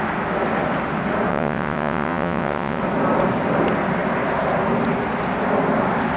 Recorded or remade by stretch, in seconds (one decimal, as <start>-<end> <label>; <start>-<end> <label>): 0.0-1.3 recorded; 1.3-2.8 remade; 2.8-6.2 recorded